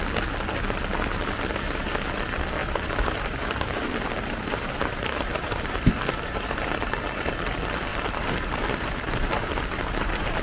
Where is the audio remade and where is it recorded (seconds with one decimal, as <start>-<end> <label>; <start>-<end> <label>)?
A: 0.0-2.6 recorded; 2.6-5.9 remade; 5.9-7.9 recorded; 7.9-10.4 remade